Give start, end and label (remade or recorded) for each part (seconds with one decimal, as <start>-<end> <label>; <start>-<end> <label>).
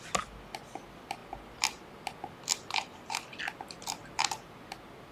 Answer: 0.0-5.1 recorded